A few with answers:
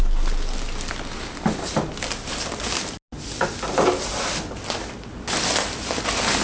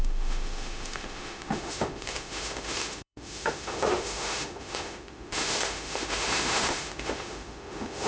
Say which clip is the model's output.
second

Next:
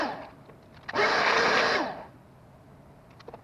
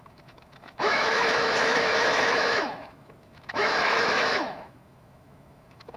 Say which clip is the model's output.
second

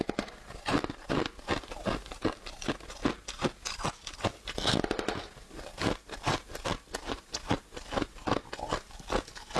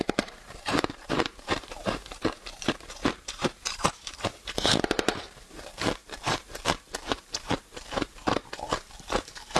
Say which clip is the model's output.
second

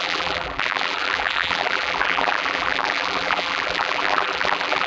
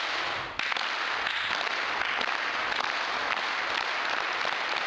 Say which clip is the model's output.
first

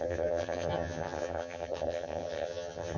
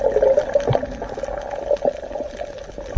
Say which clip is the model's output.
first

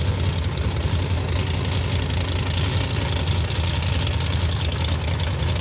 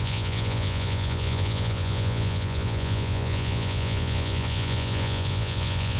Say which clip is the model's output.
second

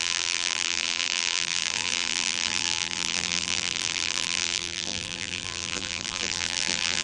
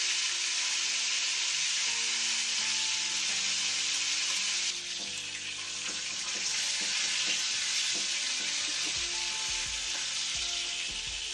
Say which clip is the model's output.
first